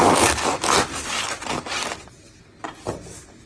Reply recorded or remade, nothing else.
recorded